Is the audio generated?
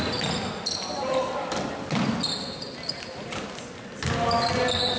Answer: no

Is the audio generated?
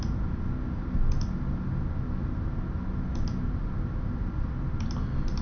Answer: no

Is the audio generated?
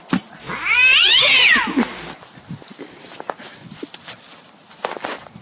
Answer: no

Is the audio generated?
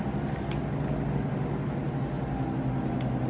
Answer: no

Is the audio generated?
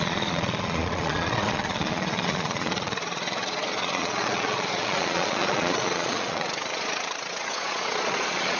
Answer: yes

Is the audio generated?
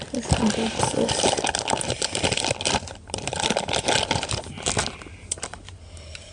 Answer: no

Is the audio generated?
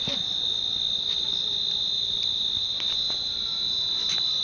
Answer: no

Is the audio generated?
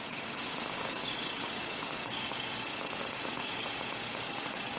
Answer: yes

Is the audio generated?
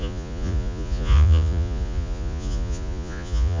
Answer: yes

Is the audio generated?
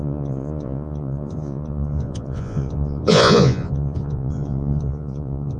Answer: yes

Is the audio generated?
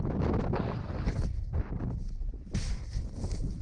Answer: no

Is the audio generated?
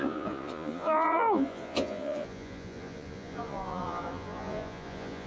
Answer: yes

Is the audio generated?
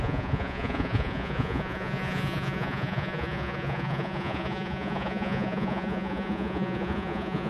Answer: yes